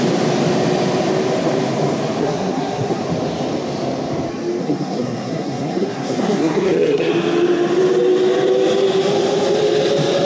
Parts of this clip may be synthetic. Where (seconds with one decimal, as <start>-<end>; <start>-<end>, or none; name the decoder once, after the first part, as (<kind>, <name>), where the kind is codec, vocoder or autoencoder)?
2.2-3.0 (codec, SNAC); 4.6-7.1